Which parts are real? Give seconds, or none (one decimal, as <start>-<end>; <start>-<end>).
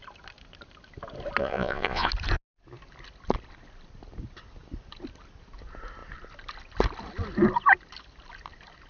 0.0-1.4; 2.1-8.9